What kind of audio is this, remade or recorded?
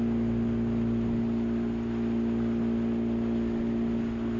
recorded